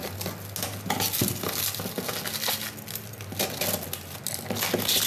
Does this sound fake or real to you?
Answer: real